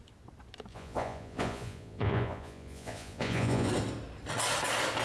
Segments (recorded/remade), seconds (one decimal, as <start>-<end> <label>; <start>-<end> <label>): 0.0-0.7 recorded; 0.7-3.7 remade; 3.7-5.0 recorded